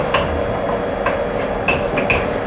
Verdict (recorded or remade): recorded